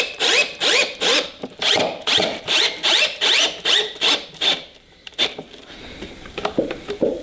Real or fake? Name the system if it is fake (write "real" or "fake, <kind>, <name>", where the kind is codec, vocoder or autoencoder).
fake, vocoder, BigVGAN v2